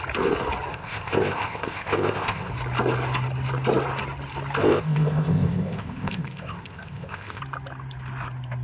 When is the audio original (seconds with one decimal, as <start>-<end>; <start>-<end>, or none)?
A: 0.0-0.7; 2.5-4.6; 7.4-8.6